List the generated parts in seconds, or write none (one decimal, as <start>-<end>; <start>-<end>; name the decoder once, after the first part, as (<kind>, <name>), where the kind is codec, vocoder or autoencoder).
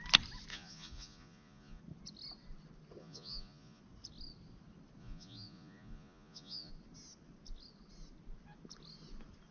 0.5-1.8 (vocoder, Vocos); 3.0-3.8; 5.0-6.7